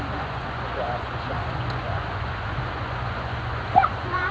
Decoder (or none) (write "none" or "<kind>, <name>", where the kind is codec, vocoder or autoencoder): vocoder, Vocos